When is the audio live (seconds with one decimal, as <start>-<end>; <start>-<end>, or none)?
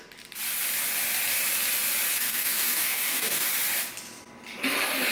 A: 0.0-2.1; 3.5-5.1